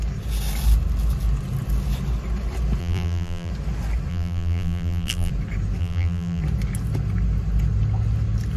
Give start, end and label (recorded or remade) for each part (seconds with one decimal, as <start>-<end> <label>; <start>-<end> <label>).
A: 0.0-2.8 recorded; 2.8-3.5 remade; 3.5-4.1 recorded; 4.1-5.3 remade; 5.3-5.8 recorded; 5.8-6.4 remade; 6.4-8.6 recorded